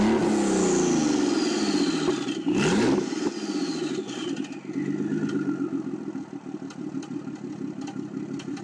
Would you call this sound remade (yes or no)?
no